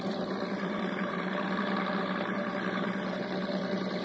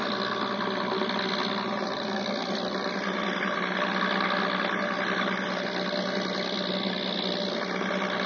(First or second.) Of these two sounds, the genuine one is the second